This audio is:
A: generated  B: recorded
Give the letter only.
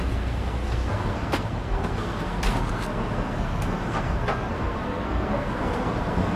A